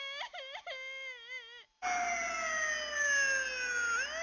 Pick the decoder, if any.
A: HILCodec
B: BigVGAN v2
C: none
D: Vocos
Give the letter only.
C